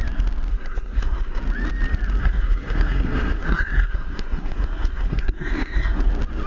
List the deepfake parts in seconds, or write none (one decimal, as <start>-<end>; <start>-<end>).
0.5-1.4; 2.2-6.1